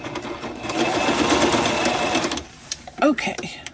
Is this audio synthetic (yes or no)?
yes